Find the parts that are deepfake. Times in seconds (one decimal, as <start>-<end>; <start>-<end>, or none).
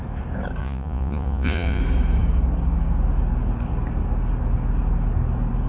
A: 0.6-1.8